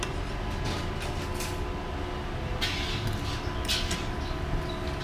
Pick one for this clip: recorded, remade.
recorded